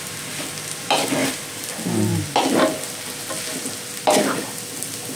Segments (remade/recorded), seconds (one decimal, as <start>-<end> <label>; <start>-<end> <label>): 0.0-1.2 recorded; 1.2-1.7 remade; 1.7-5.2 recorded